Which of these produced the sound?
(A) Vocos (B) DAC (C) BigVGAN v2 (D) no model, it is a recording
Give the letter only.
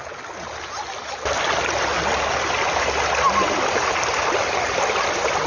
D